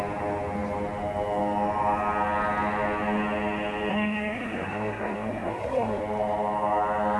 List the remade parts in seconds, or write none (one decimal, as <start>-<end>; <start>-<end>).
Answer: 3.9-6.0